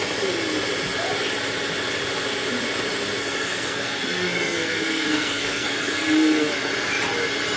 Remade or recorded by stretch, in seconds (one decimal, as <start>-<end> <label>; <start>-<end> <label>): 0.0-3.2 recorded; 3.2-6.7 remade; 6.7-7.6 recorded